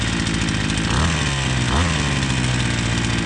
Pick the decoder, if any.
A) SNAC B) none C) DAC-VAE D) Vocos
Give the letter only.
B